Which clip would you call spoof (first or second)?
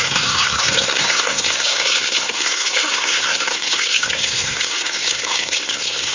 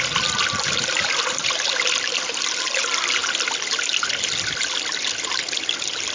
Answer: first